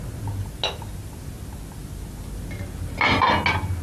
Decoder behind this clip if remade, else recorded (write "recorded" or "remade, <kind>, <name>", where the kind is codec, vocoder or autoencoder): recorded